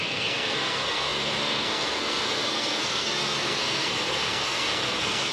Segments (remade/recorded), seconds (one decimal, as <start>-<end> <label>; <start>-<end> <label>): 0.0-5.3 remade